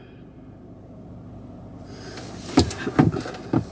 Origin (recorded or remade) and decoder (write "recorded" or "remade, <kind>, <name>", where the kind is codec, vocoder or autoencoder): recorded